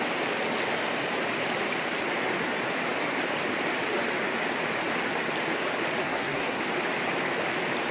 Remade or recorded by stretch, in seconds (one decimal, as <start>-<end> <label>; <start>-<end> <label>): 0.0-6.0 recorded; 6.0-6.6 remade; 6.6-7.9 recorded